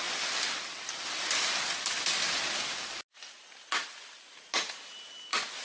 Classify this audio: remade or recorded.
recorded